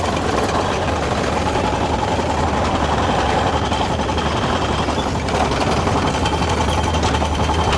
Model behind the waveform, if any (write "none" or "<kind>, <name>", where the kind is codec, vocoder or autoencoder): none